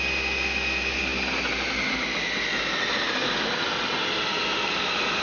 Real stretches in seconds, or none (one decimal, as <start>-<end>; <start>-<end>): 0.0-5.2